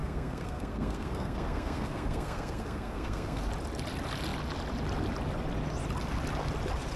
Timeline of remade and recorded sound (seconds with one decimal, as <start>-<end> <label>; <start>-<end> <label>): 0.0-3.4 remade; 3.4-7.0 recorded